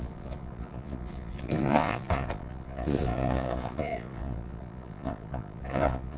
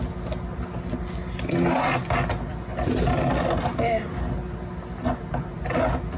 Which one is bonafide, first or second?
second